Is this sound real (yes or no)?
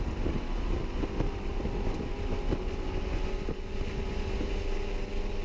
yes